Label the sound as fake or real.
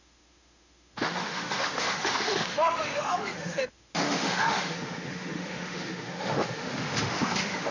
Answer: fake